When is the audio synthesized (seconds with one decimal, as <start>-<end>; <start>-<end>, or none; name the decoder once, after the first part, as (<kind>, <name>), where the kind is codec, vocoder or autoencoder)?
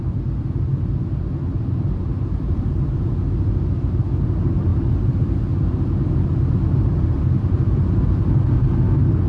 0.7-1.2 (vocoder, BigVGAN v2); 2.1-2.9; 4.7-8.3